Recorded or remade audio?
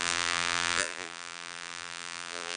remade